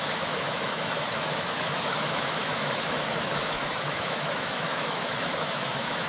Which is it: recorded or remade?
remade